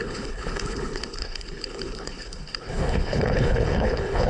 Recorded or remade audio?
remade